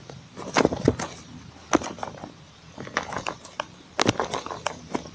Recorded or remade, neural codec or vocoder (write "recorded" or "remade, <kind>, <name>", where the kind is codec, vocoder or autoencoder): recorded